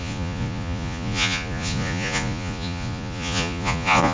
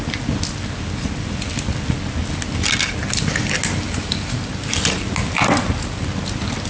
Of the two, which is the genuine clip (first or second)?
second